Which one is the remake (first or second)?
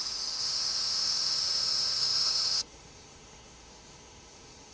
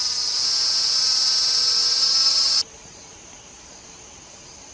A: first